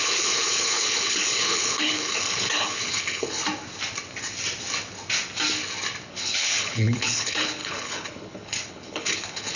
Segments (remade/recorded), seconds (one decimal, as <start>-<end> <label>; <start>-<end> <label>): 0.0-3.4 remade; 3.4-6.1 recorded; 6.1-9.6 remade